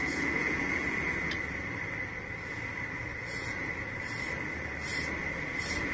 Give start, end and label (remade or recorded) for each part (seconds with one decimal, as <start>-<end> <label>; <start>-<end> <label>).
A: 0.0-1.3 remade; 1.3-3.1 recorded; 3.1-3.7 remade; 3.7-5.9 recorded